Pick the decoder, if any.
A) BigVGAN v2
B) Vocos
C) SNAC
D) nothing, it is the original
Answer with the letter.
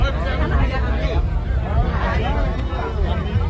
D